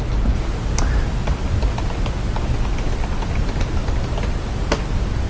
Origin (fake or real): real